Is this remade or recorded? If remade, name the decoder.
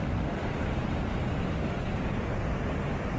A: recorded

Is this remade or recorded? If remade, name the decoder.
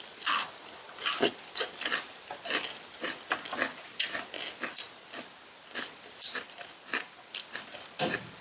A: recorded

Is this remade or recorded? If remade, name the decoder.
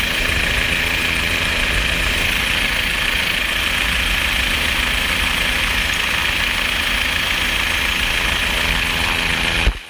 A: recorded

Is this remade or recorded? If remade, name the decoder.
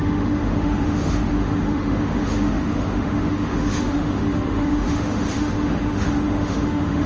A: remade, autoencoder, DAC-VAE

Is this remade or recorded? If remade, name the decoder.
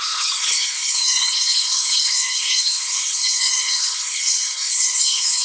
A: remade, codec, HILCodec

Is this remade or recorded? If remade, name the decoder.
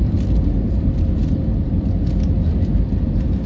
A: recorded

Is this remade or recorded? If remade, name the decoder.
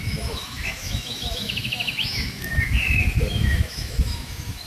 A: remade, autoencoder, DAC-VAE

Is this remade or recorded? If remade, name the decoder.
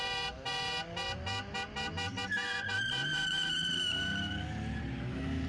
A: remade, vocoder, BigVGAN v2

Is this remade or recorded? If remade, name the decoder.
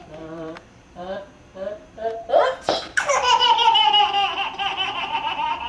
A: remade, vocoder, BigVGAN v2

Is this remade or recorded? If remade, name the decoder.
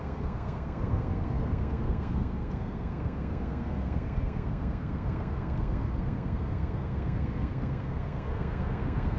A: remade, codec, SNAC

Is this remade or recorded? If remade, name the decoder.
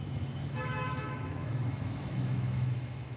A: remade, autoencoder, DAC-VAE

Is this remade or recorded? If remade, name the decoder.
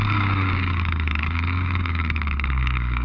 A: remade, codec, DAC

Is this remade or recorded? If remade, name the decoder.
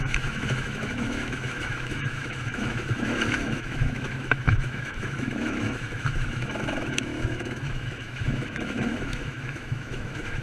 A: remade, autoencoder, DAC-VAE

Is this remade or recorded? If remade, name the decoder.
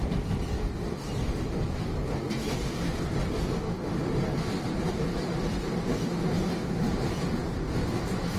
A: remade, vocoder, BigVGAN v2